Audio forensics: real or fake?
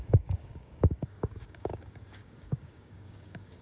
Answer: fake